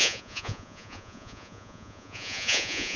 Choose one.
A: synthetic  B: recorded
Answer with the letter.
A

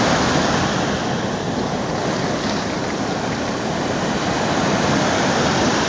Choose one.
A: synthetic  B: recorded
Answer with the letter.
B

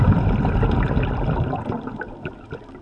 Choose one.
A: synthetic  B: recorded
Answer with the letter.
B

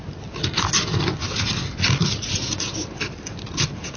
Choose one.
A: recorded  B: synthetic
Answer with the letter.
A